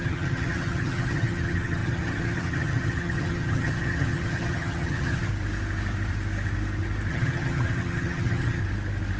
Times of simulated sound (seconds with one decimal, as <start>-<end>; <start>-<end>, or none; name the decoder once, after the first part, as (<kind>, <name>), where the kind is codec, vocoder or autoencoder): 0.0-5.3 (vocoder, HiFi-GAN); 7.1-8.6